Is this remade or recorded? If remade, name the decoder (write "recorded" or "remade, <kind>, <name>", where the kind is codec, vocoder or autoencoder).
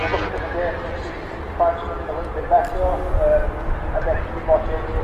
recorded